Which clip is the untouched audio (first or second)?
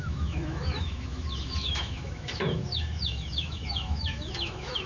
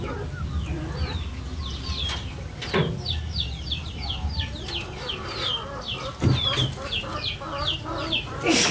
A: second